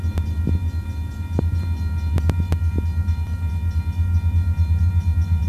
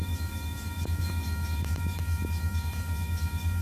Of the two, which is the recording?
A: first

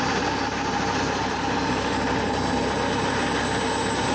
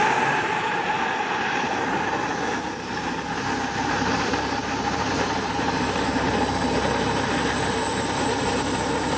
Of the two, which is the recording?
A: first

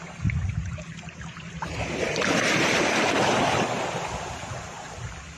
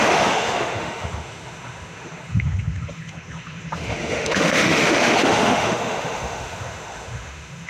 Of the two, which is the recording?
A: first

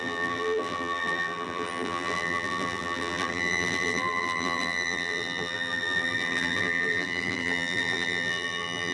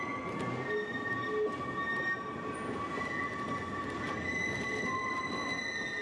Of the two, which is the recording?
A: second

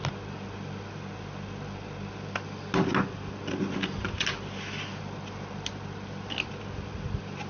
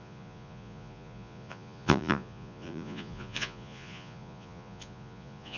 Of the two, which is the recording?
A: first